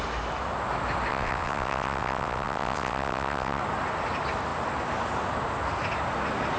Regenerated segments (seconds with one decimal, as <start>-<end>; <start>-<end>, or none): 1.1-3.6